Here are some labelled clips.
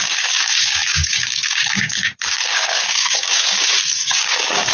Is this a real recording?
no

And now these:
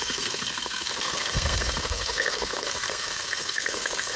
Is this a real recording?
no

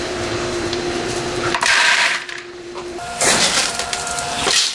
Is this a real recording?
no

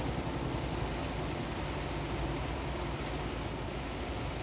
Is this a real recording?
yes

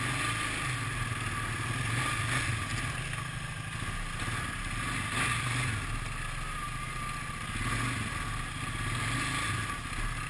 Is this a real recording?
yes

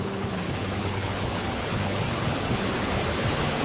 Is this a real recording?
no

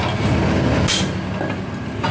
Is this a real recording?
yes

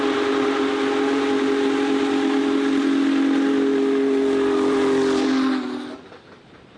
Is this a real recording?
yes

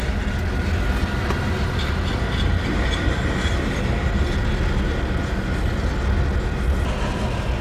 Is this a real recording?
yes